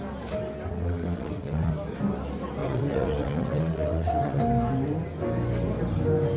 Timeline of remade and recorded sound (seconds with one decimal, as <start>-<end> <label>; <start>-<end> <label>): 0.0-0.7 recorded; 0.7-1.7 remade; 1.7-2.6 recorded; 2.6-4.4 remade; 4.4-6.4 recorded